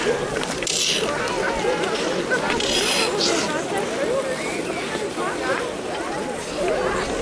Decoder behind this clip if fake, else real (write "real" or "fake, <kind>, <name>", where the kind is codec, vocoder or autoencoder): real